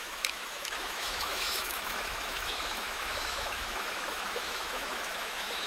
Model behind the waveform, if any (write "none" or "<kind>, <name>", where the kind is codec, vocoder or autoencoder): autoencoder, DAC-VAE